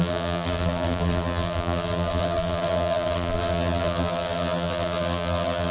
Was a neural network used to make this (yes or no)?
yes